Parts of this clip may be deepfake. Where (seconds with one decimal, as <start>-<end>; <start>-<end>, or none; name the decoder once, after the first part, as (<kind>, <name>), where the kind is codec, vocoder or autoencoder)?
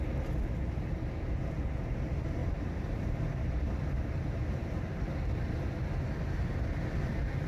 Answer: 2.4-5.4 (vocoder, BigVGAN v2)